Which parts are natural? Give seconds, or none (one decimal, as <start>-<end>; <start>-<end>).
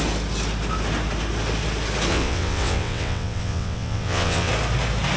0.0-2.1; 4.5-5.2